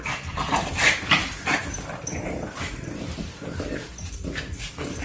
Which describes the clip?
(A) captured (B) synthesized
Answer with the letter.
B